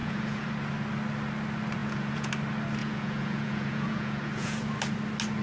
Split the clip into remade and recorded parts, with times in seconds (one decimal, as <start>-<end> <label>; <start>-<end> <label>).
0.0-0.5 remade; 0.5-1.8 recorded; 1.8-2.3 remade; 2.3-2.8 recorded; 2.8-4.7 remade; 4.7-5.4 recorded